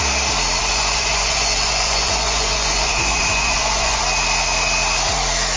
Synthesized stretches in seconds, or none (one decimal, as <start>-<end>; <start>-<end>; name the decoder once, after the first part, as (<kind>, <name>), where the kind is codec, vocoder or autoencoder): 0.6-4.0 (vocoder, Vocos)